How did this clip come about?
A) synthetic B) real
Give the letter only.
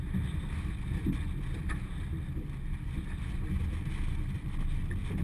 B